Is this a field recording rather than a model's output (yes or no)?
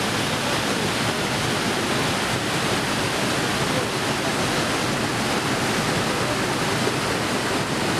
yes